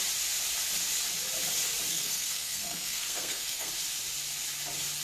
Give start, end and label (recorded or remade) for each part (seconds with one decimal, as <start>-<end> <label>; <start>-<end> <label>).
0.0-1.9 recorded; 1.9-3.7 remade; 3.7-5.0 recorded